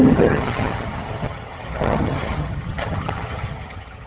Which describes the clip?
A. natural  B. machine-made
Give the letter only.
B